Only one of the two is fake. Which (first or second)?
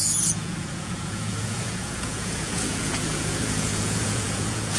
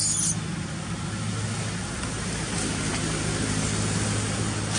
first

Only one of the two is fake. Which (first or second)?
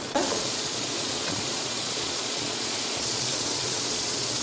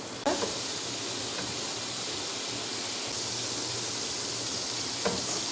first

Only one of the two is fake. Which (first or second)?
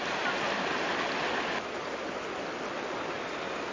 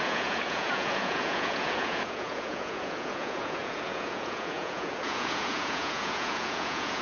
second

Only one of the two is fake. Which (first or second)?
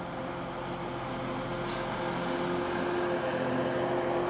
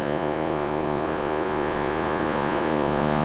second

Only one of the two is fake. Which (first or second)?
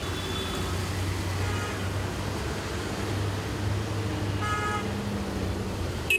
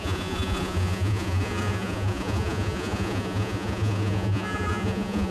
second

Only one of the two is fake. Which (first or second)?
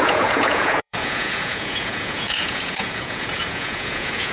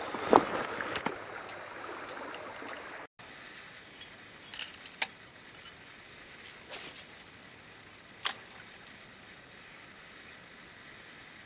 first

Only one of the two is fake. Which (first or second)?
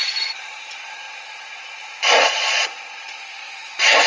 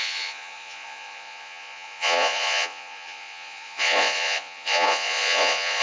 second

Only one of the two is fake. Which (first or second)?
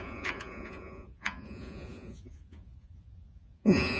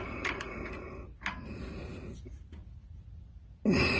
first